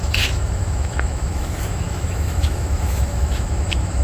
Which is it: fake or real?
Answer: fake